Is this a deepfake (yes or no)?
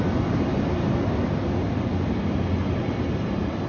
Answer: no